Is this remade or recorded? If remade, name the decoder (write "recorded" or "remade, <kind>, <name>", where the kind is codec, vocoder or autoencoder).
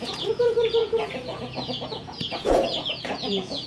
remade, vocoder, Vocos